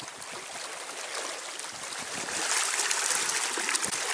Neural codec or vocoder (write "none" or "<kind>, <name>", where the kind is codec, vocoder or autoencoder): none